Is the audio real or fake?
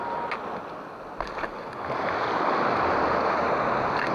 real